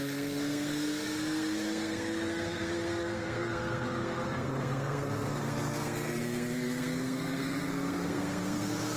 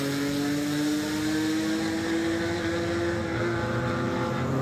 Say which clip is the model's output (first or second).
first